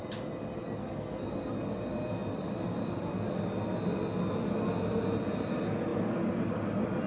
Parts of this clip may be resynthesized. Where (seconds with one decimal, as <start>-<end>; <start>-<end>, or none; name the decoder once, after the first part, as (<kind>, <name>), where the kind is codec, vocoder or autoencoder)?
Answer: 0.8-1.3 (codec, SNAC)